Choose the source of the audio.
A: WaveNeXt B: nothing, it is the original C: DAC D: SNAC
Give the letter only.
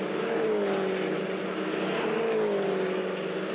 B